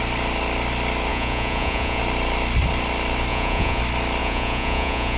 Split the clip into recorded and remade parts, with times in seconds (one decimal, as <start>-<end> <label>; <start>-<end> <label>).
0.0-1.1 recorded; 1.1-2.0 remade; 2.0-3.3 recorded; 3.3-3.8 remade; 3.8-4.2 recorded; 4.2-5.2 remade